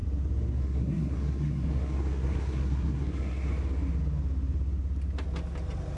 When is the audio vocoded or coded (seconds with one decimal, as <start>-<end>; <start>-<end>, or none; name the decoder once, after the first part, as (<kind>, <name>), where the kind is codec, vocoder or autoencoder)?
0.6-3.5 (codec, SNAC)